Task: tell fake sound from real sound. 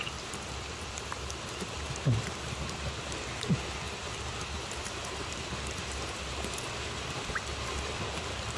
real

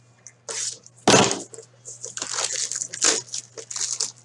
real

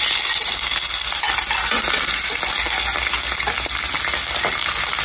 real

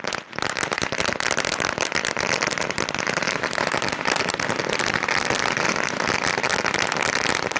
fake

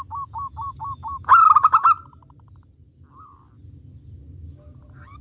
real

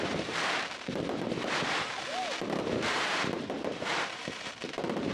fake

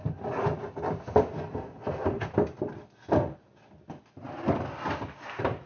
real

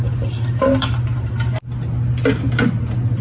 real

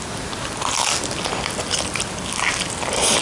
real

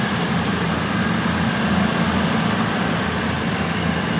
real